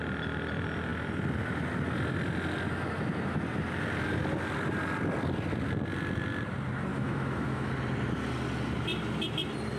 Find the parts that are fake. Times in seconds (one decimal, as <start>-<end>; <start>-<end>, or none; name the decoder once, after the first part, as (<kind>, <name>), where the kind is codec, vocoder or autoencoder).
6.9-7.7 (autoencoder, DAC-VAE)